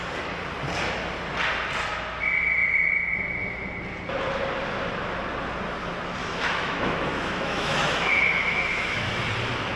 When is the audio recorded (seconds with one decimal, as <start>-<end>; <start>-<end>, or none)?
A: 0.0-6.2; 9.2-9.8